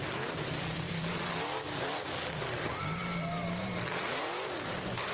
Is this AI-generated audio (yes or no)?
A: yes